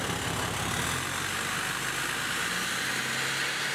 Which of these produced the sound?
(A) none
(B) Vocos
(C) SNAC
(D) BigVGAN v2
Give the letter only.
A